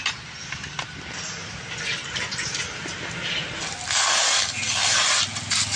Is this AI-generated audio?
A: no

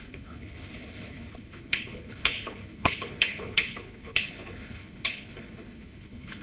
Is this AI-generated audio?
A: yes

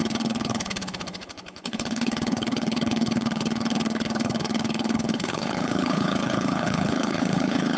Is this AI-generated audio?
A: yes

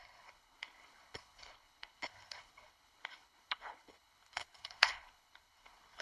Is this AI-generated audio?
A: yes